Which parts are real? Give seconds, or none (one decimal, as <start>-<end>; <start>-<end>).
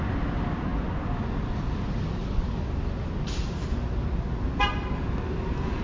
0.0-5.8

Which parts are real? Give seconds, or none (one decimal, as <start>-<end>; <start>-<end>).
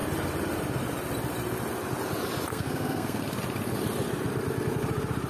0.0-2.5; 3.2-5.3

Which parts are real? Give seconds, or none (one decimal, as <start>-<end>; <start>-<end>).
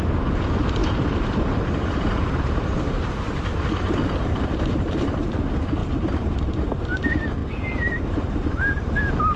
0.0-0.8; 5.1-5.8; 6.6-7.4; 8.5-9.4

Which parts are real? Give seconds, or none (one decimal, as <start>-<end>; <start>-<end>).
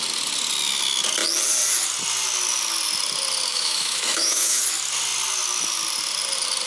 0.0-3.5; 4.6-6.7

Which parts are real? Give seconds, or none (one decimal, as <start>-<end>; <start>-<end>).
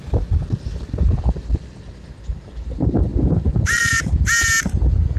0.0-0.7; 1.8-5.2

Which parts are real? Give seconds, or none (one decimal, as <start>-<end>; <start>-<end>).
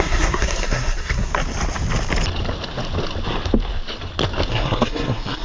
1.3-4.5